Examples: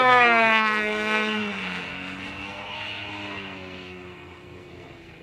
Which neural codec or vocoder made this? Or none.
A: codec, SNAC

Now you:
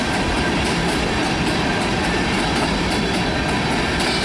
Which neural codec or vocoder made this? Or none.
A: none